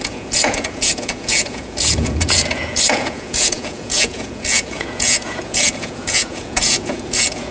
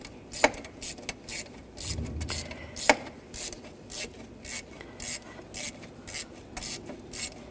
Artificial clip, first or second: first